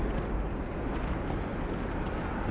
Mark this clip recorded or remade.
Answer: recorded